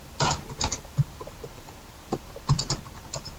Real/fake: real